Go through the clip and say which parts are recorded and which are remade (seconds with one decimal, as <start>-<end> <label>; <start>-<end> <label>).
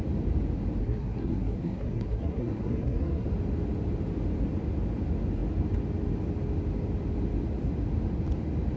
0.0-0.8 recorded; 0.8-3.3 remade; 3.3-8.8 recorded